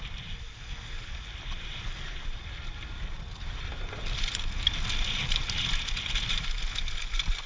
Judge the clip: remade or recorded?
recorded